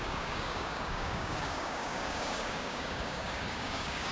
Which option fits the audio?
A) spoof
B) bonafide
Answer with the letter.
A